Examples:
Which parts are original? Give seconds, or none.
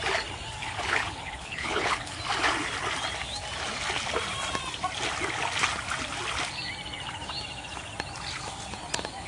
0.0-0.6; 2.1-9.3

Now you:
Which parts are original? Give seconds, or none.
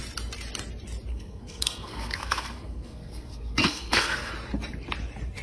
0.0-1.1; 4.3-5.4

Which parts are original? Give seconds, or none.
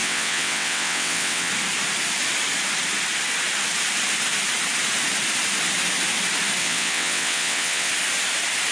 1.5-6.6; 7.9-8.7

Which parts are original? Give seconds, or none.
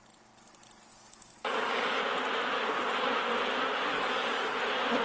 0.0-0.9; 2.0-3.9; 4.6-5.0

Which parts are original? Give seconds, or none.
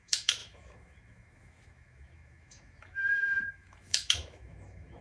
none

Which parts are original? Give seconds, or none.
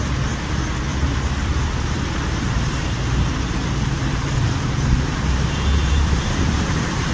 0.0-0.9; 5.2-5.8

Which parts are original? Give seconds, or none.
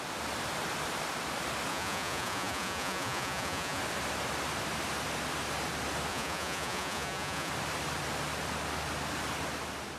0.0-1.7; 3.8-6.1; 7.5-10.0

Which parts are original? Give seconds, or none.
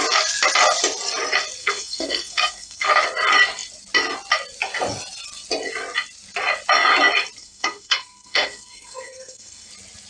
0.0-1.6; 2.9-7.4; 9.7-10.1